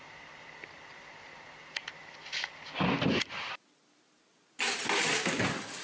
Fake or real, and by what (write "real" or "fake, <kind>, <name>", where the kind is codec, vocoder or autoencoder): real